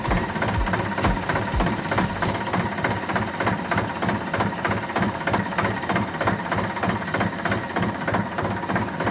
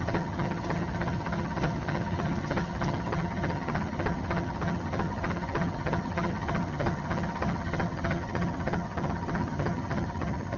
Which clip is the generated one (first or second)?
second